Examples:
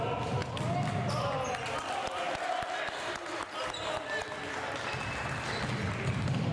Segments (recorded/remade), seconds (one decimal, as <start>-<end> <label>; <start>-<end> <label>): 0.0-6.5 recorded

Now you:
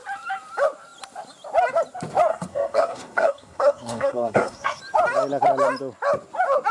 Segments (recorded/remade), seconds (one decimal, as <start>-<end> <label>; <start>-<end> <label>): 0.0-2.3 recorded; 2.3-4.8 remade; 4.8-6.7 recorded

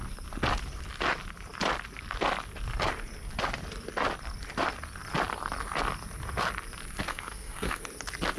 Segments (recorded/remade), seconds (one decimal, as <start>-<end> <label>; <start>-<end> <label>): 0.0-7.1 recorded; 7.1-7.8 remade; 7.8-8.4 recorded